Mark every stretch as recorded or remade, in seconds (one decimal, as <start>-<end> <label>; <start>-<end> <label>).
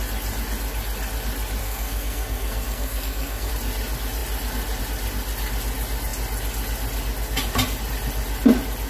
0.0-1.6 recorded; 1.6-3.5 remade; 3.5-8.9 recorded